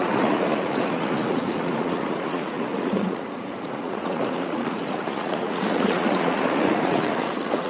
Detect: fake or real fake